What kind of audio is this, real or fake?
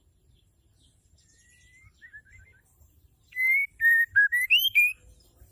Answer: fake